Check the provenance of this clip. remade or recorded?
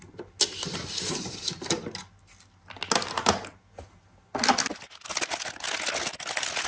recorded